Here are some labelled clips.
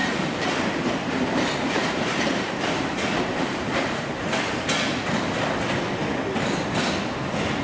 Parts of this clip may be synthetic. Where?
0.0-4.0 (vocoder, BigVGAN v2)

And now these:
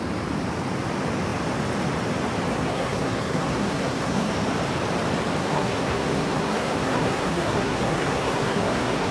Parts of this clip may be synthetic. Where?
2.5-4.3 (codec, SNAC); 5.4-9.1

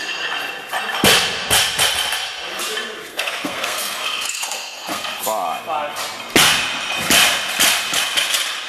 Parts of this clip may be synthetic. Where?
3.1-5.2 (codec, SNAC)

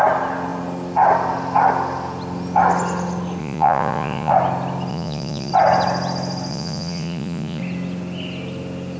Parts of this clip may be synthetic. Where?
3.4-4.3 (vocoder, Vocos); 4.9-5.5; 6.5-7.6

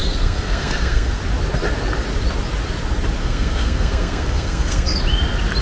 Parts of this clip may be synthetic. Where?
0.0-1.2 (codec, SNAC); 3.2-5.0

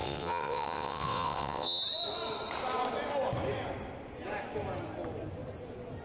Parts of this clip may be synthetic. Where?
0.0-1.8 (vocoder, WaveNeXt)